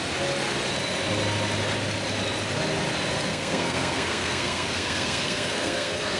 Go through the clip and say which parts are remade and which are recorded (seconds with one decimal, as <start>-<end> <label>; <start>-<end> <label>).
0.0-3.3 recorded; 3.3-6.2 remade

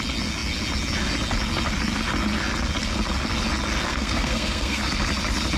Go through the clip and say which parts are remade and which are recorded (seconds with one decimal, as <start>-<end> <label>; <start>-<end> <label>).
0.0-3.9 recorded; 3.9-4.8 remade; 4.8-5.6 recorded

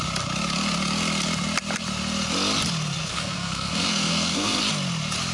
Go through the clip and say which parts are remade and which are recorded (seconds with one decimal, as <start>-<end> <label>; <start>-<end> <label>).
0.0-3.0 recorded; 3.0-4.6 remade; 4.6-5.3 recorded

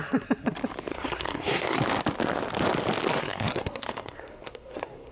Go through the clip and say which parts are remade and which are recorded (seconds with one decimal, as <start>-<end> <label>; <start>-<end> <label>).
0.0-0.9 recorded; 0.9-1.8 remade; 1.8-3.1 recorded; 3.1-5.1 remade

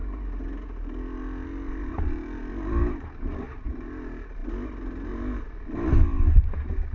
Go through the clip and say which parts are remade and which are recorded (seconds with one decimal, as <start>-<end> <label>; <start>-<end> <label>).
0.0-6.9 recorded

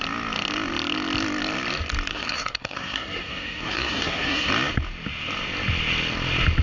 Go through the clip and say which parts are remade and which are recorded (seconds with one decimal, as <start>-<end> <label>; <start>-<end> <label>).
0.0-2.1 recorded; 2.1-4.5 remade; 4.5-6.6 recorded